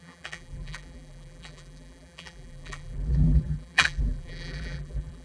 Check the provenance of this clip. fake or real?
fake